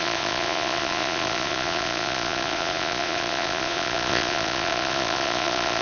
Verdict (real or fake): fake